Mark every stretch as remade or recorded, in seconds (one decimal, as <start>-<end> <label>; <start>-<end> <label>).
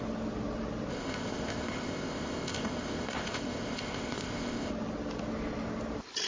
0.0-0.9 recorded; 0.9-4.7 remade; 4.7-6.3 recorded